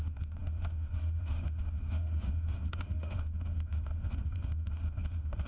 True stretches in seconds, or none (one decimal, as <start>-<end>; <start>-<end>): none